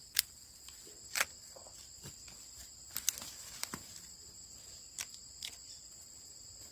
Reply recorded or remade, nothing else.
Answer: remade